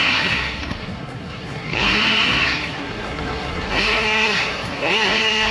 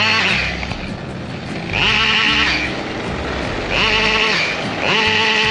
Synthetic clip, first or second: first